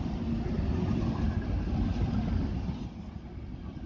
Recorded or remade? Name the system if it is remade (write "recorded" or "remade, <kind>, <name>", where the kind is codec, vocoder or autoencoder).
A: recorded